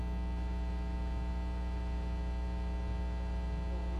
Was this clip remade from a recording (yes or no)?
no